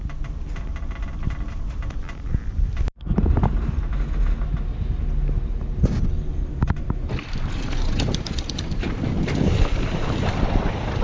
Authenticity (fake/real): real